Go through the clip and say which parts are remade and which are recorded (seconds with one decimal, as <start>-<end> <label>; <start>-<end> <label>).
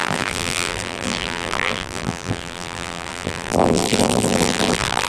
0.0-5.1 remade